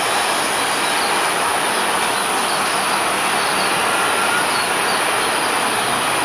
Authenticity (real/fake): real